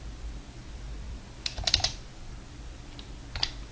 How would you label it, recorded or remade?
remade